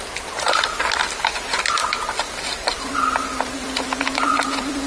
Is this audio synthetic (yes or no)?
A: yes